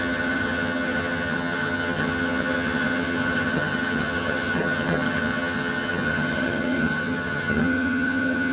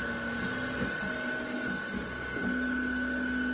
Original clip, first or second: second